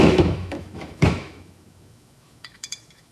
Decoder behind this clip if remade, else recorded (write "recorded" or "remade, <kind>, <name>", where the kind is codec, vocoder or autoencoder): remade, autoencoder, DAC-VAE